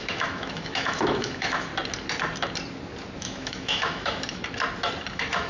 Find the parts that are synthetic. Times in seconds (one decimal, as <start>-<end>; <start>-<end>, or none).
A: 0.0-1.7; 3.2-4.4; 5.1-5.5